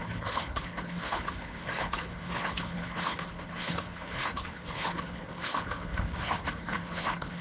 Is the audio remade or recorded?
remade